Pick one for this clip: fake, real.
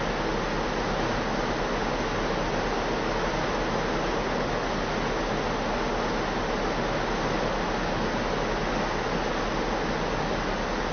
real